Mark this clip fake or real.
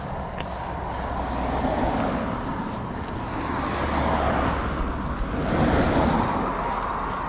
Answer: real